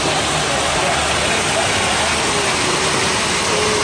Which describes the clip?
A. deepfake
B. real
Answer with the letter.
B